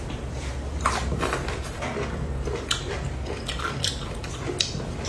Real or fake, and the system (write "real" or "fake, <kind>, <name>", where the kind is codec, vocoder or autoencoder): fake, vocoder, BigVGAN v2